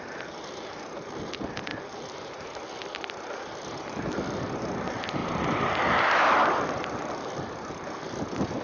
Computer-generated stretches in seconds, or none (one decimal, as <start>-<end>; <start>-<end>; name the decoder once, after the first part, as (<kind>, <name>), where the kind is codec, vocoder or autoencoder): 1.7-3.8 (vocoder, BigVGAN v2); 5.2-7.1